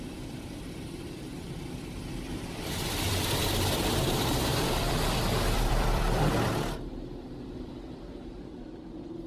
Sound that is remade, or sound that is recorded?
remade